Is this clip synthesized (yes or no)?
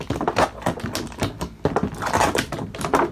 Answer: no